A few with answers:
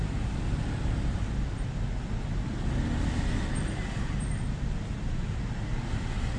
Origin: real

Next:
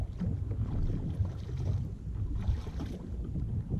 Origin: real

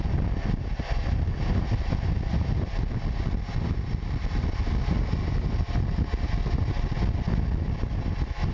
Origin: real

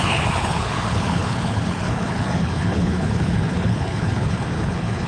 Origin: fake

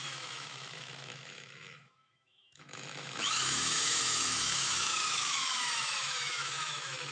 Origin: fake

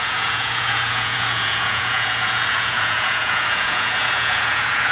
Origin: fake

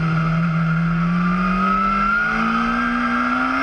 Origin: real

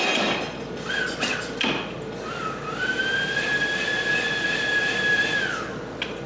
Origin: real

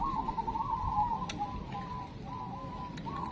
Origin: real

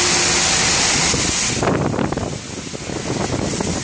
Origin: real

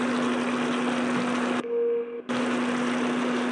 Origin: real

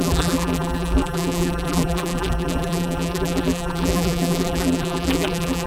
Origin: fake